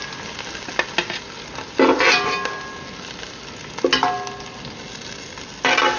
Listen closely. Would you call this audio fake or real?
real